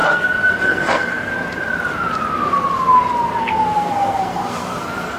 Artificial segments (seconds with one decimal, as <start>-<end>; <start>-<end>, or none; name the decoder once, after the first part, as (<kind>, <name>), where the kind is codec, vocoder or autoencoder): 0.0-1.3 (codec, SNAC); 3.4-5.2